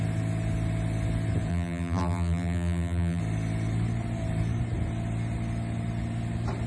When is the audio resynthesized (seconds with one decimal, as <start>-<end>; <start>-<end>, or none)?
1.5-3.2